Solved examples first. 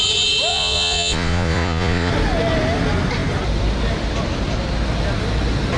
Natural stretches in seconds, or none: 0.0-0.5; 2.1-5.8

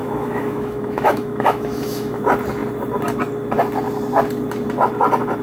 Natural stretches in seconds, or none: 2.2-5.4

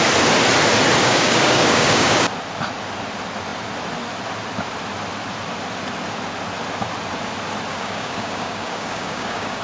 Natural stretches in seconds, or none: 0.0-1.0; 2.3-7.7

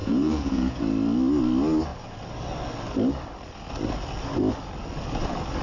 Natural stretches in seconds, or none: 0.8-5.6

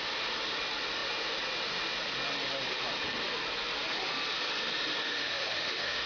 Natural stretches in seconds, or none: 0.0-5.0

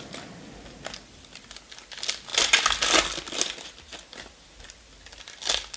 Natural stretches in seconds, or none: 0.0-5.8

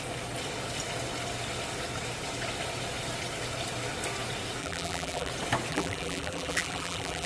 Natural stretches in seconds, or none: 0.0-4.6; 5.3-5.7

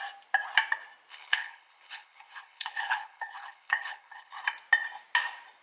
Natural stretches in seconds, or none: 0.0-1.1; 4.4-5.6